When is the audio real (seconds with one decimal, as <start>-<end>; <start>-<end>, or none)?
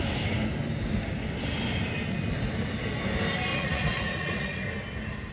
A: 0.0-3.5; 4.6-5.3